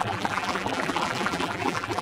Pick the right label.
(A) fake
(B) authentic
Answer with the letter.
A